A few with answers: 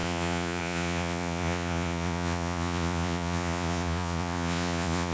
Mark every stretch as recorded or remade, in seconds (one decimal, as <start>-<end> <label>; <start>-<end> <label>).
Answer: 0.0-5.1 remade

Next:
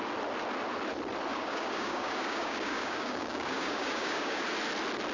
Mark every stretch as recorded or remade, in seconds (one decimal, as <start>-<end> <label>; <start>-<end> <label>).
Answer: 0.0-1.3 recorded; 1.3-4.4 remade; 4.4-5.1 recorded

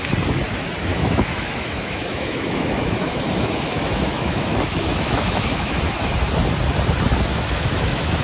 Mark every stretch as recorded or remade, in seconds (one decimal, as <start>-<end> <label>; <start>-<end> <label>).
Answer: 0.0-0.9 recorded; 0.9-5.8 remade; 5.8-7.3 recorded; 7.3-8.2 remade

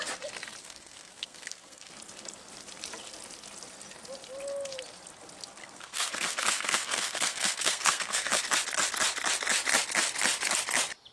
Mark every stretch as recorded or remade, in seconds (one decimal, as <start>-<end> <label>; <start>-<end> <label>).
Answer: 0.0-0.6 recorded; 0.6-1.9 remade; 1.9-5.6 recorded; 5.6-8.4 remade; 8.4-11.1 recorded